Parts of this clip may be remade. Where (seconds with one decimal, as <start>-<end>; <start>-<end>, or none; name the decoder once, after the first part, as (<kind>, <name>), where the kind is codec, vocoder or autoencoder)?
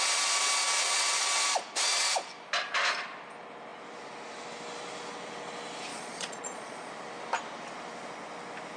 5.9-6.9 (vocoder, Vocos)